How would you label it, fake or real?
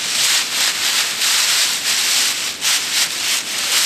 real